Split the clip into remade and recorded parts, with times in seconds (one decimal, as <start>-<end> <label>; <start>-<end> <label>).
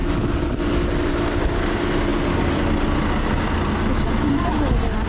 0.0-5.1 recorded